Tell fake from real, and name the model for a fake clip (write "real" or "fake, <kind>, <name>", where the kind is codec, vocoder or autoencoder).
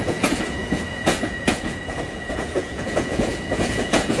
fake, vocoder, Vocos